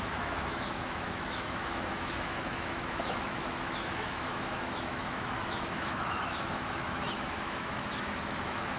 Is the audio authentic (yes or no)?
no